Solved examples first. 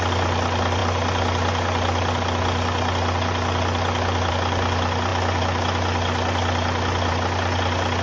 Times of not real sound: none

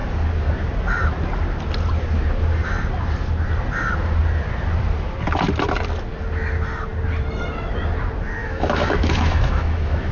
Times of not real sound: 8.4-10.1 (autoencoder, DAC-VAE)

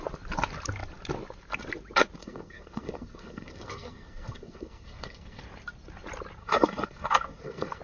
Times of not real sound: 2.2-5.4 (codec, SNAC); 6.4-7.8

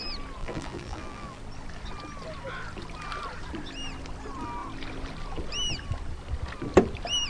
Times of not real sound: 0.4-1.4 (vocoder, BigVGAN v2)

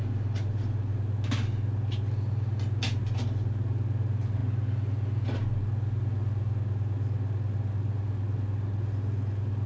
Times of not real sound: none

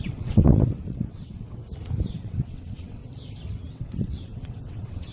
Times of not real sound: 0.0-1.6 (vocoder, WaveNeXt); 2.1-3.0; 3.7-5.1

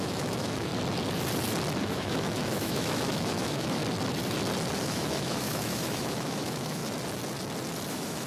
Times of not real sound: 0.0-0.7 (autoencoder, DAC-VAE); 1.8-3.8; 4.8-6.8; 7.9-8.3

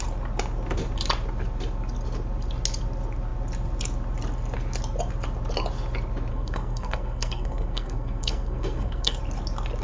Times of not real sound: 6.3-9.2 (codec, SNAC)